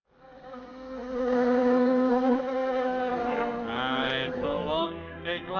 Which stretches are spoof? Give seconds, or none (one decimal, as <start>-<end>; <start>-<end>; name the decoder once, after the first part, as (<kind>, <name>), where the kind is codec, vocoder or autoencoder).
0.0-5.6 (codec, SNAC)